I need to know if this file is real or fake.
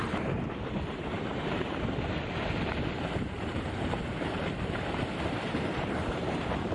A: fake